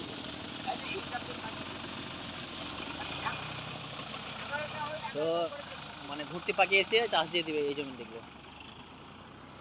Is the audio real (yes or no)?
yes